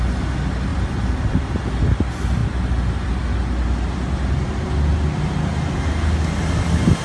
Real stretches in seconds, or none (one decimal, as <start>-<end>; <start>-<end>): 0.0-0.7; 1.7-2.4; 5.8-7.0